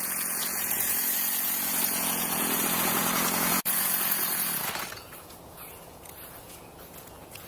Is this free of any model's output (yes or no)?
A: no